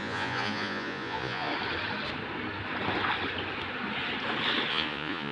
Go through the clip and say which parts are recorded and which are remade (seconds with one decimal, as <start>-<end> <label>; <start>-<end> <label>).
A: 0.0-1.5 remade; 1.5-4.7 recorded; 4.7-5.3 remade